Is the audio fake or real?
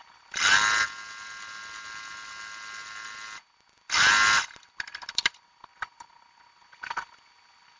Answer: real